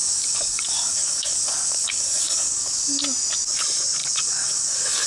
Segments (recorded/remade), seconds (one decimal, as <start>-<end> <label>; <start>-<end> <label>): 0.0-3.0 remade; 3.0-4.0 recorded; 4.0-5.1 remade